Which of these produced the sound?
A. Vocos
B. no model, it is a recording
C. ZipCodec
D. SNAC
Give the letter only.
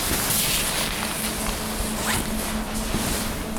B